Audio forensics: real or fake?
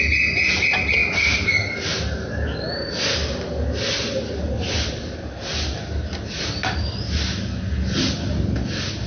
real